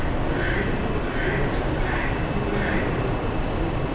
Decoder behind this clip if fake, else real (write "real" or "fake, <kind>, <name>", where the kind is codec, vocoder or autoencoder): real